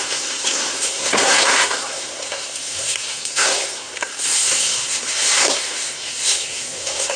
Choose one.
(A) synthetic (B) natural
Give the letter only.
A